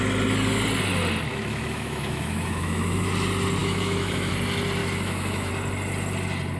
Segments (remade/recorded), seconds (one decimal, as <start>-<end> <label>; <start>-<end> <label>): 0.0-1.3 recorded; 1.3-3.1 remade; 3.1-3.6 recorded; 3.6-4.3 remade; 4.3-4.8 recorded; 4.8-5.5 remade; 5.5-6.6 recorded